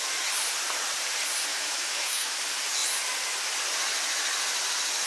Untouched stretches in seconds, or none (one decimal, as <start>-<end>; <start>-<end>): 0.0-1.5; 2.4-5.1